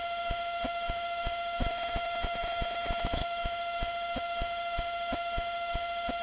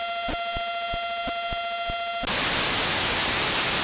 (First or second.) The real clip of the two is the second